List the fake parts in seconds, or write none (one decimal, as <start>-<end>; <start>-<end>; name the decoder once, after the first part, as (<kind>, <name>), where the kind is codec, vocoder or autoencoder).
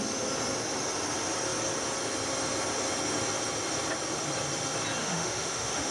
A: 5.0-5.9 (autoencoder, DAC-VAE)